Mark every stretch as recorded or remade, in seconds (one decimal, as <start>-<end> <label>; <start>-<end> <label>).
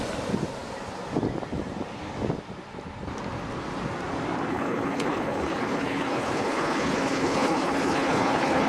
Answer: 0.0-4.5 recorded; 4.5-8.7 remade